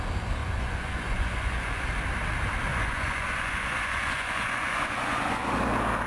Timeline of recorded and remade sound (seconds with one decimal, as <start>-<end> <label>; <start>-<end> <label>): 0.0-0.4 recorded; 0.4-1.8 remade; 1.8-2.7 recorded; 2.7-5.4 remade; 5.4-6.1 recorded